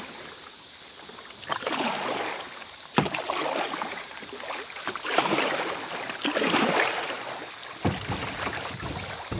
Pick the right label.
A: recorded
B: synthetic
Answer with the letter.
A